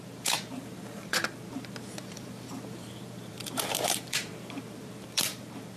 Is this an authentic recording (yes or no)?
no